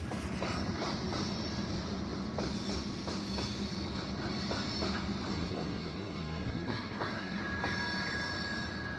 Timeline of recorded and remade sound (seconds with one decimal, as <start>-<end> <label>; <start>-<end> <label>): 0.0-5.3 recorded; 5.3-7.4 remade; 7.4-9.0 recorded